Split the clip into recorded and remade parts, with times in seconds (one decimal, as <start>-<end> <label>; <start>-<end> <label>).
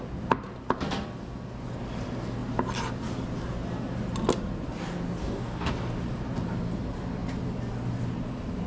0.0-5.2 recorded; 5.2-5.7 remade; 5.7-8.7 recorded